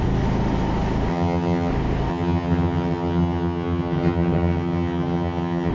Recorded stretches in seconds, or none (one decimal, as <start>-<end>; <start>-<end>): 0.0-1.1; 1.7-2.1